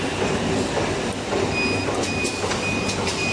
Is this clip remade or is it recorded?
recorded